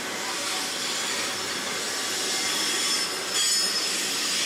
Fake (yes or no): no